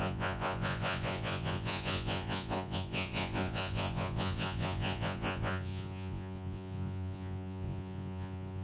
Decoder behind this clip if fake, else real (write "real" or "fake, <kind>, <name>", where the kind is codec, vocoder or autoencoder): fake, vocoder, Vocos